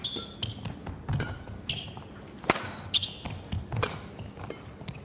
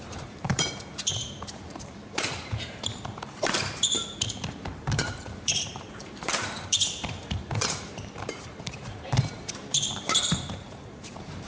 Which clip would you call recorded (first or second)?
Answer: first